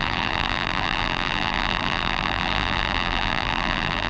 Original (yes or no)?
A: no